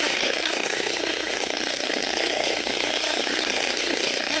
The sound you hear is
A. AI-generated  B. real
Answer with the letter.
A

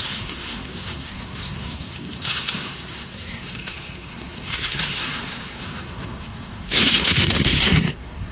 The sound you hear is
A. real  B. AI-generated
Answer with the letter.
B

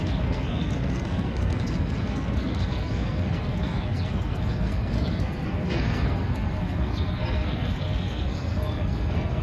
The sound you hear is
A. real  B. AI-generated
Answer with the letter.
B